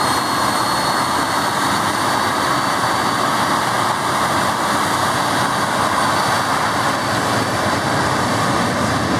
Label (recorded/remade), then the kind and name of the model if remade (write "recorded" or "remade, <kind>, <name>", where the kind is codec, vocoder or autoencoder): recorded